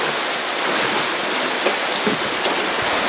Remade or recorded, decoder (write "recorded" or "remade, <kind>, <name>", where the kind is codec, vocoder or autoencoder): recorded